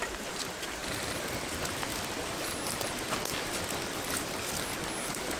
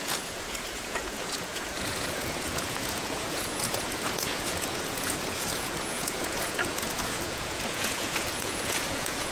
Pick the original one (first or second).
first